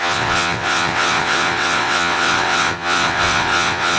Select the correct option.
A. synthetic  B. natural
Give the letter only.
A